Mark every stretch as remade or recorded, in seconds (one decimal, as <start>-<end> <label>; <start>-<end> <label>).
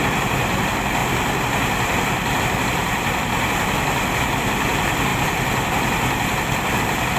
0.0-1.0 remade; 1.0-2.4 recorded; 2.4-7.2 remade